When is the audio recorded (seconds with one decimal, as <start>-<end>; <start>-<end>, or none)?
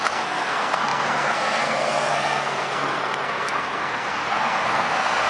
none